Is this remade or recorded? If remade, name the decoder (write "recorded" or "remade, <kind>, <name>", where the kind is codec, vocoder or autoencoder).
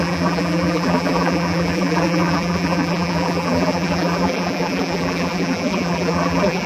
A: remade, vocoder, BigVGAN v2